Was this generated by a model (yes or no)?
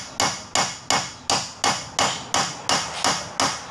no